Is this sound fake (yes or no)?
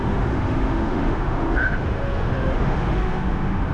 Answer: yes